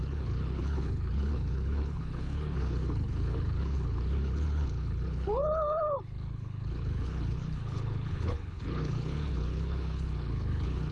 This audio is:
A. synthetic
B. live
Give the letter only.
A